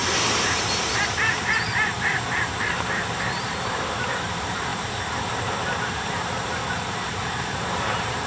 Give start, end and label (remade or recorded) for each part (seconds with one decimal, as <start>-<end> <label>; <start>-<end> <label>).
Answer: 0.0-4.7 remade; 4.7-6.1 recorded; 6.1-6.6 remade; 6.6-7.4 recorded; 7.4-8.3 remade

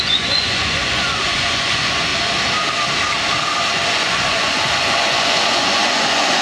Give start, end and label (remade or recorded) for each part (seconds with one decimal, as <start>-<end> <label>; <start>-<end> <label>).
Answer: 0.0-2.1 remade; 2.1-3.7 recorded; 3.7-6.4 remade

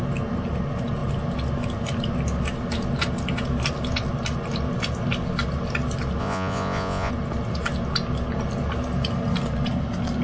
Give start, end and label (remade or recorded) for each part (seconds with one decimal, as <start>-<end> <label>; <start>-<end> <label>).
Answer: 0.0-6.2 recorded; 6.2-7.1 remade; 7.1-10.2 recorded

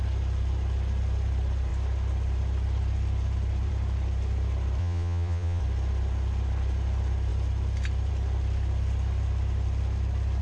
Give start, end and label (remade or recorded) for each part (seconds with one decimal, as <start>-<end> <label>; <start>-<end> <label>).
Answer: 0.0-4.8 recorded; 4.8-5.6 remade; 5.6-10.4 recorded

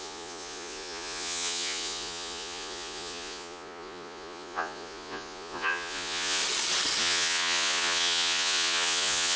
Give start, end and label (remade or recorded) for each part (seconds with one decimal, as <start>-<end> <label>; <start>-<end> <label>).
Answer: 0.0-6.4 remade; 6.4-7.0 recorded; 7.0-9.4 remade

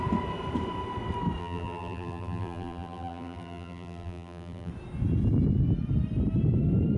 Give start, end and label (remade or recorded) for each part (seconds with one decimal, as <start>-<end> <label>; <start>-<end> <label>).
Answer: 0.0-1.4 recorded; 1.4-4.7 remade; 4.7-7.0 recorded